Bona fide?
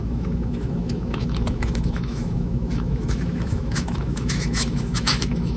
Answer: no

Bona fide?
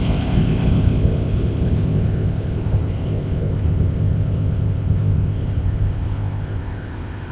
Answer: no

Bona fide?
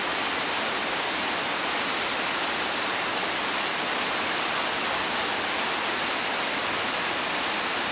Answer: yes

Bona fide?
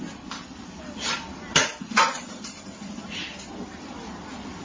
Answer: no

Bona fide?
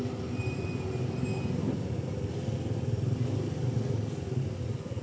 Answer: yes